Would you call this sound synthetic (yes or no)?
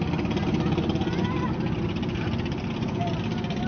no